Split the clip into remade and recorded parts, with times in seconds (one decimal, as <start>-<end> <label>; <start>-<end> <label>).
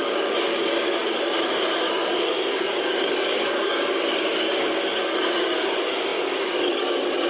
0.0-7.3 remade